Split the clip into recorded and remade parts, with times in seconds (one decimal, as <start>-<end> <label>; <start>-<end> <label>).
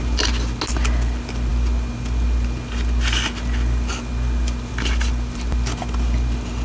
0.0-6.6 recorded